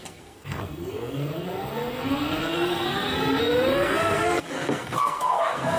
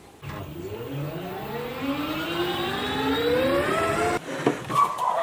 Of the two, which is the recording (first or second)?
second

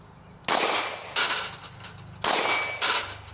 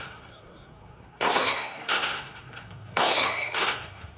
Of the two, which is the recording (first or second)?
first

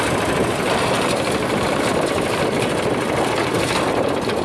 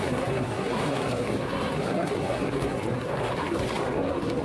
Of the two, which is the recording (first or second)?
first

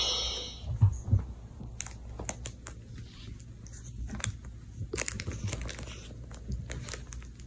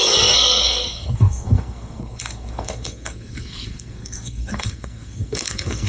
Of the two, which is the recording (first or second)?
first